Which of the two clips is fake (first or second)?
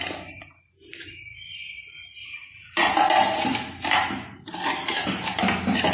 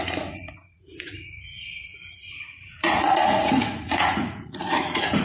second